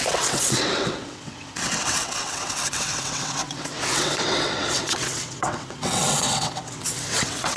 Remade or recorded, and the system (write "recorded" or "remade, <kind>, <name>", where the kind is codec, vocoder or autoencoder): remade, vocoder, WaveNeXt